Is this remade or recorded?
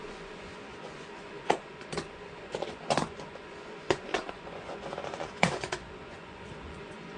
remade